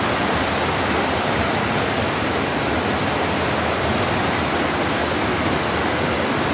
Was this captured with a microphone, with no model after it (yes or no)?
yes